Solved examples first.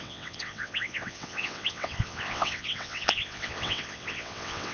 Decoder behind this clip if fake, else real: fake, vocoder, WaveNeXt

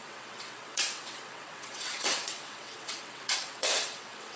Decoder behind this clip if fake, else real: fake, vocoder, WaveNeXt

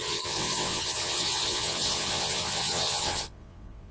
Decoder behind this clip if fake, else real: fake, vocoder, WaveNeXt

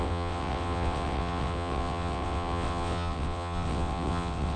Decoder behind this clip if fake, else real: fake, vocoder, WaveNeXt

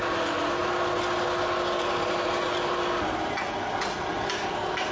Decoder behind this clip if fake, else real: real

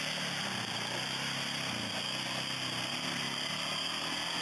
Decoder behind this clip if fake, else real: real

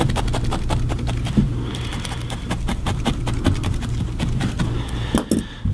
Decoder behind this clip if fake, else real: real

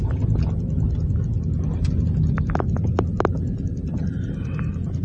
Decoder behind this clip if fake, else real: real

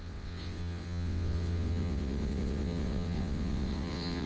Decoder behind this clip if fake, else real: fake, vocoder, WaveNeXt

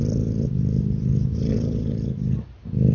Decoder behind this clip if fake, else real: real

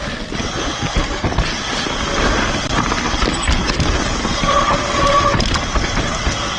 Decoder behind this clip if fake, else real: real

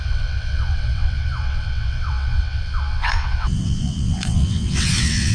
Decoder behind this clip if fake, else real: fake, vocoder, WaveNeXt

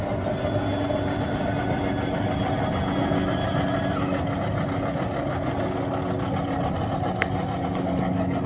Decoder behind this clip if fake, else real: real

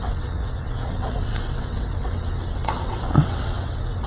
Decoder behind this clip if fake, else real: fake, vocoder, WaveNeXt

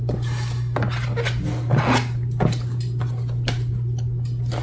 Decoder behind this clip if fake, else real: real